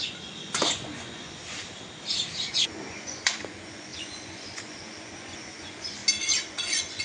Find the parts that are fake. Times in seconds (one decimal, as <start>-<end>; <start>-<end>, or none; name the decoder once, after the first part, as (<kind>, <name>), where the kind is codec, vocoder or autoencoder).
0.0-1.4 (vocoder, Vocos); 2.5-6.0; 6.5-7.0